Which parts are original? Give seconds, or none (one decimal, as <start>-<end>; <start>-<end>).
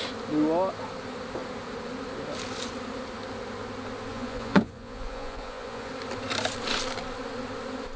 0.0-4.1; 5.9-8.0